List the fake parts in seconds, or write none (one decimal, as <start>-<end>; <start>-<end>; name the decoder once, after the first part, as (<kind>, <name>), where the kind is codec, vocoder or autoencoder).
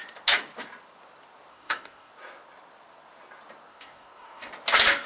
1.5-2.1 (codec, DAC); 3.7-4.5